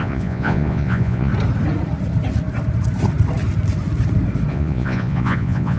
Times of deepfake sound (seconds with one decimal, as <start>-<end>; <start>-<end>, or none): 0.0-1.3; 4.5-5.8